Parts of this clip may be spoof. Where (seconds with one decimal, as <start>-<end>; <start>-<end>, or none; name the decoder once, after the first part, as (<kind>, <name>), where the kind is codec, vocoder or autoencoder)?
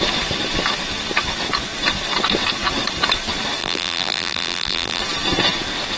3.6-5.0 (vocoder, BigVGAN v2)